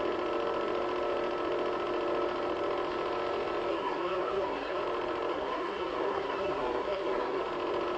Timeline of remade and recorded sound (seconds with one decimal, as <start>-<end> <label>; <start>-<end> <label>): 0.0-3.7 recorded; 3.7-4.8 remade; 4.8-5.3 recorded; 5.3-7.4 remade; 7.4-8.0 recorded